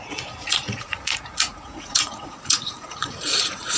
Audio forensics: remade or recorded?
remade